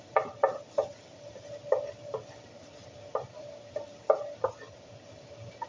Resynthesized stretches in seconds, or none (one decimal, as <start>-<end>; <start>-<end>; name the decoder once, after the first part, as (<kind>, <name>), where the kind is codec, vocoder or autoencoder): none